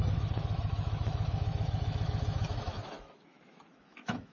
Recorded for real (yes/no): no